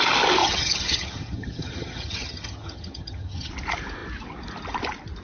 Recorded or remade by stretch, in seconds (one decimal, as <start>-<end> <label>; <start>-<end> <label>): 0.0-0.4 recorded; 0.4-3.5 remade; 3.5-5.2 recorded